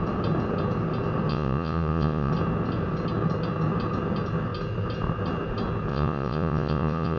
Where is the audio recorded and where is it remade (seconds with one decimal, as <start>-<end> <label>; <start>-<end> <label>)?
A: 0.0-1.3 recorded; 1.3-2.3 remade; 2.3-5.9 recorded; 5.9-7.2 remade

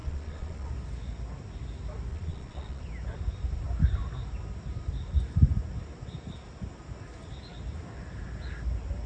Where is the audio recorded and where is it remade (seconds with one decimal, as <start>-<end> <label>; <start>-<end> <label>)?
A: 0.0-0.7 remade; 0.7-2.1 recorded; 2.1-2.8 remade; 2.8-9.1 recorded

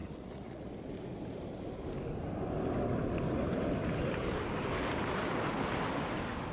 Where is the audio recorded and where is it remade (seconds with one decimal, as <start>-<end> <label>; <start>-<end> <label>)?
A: 0.0-0.7 remade; 0.7-6.5 recorded

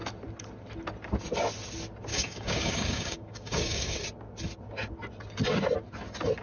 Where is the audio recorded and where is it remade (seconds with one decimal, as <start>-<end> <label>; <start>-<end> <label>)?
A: 0.0-2.1 recorded; 2.1-4.0 remade; 4.0-6.4 recorded

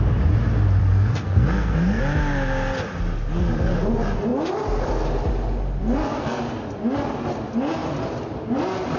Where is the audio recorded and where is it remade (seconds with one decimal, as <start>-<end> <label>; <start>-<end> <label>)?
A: 0.0-0.8 recorded; 0.8-2.0 remade; 2.0-5.8 recorded; 5.8-6.4 remade; 6.4-9.0 recorded